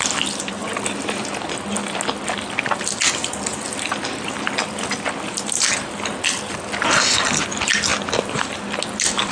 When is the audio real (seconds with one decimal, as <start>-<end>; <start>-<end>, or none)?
0.0-9.3